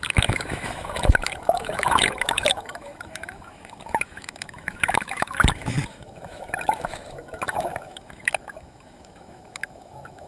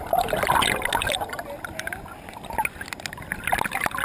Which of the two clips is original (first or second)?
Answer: second